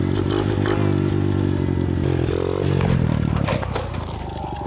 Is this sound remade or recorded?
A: recorded